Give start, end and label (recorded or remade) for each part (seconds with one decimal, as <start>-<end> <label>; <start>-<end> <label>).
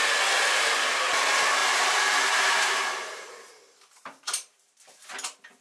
0.0-1.6 recorded; 1.6-4.8 remade; 4.8-5.6 recorded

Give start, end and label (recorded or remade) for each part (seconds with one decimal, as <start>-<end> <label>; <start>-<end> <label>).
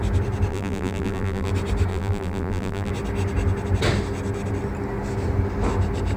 0.0-0.5 recorded; 0.5-1.5 remade; 1.5-1.9 recorded; 1.9-2.9 remade; 2.9-6.2 recorded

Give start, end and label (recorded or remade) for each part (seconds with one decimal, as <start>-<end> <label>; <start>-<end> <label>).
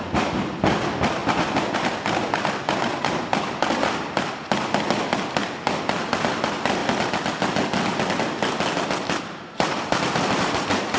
0.0-1.2 remade; 1.2-5.8 recorded; 5.8-6.8 remade; 6.8-9.2 recorded; 9.2-11.0 remade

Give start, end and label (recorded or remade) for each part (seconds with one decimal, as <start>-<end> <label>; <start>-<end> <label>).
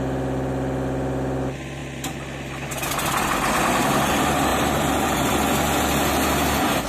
0.0-4.5 recorded; 4.5-5.3 remade; 5.3-6.9 recorded